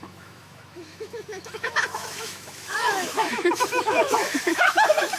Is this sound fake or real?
fake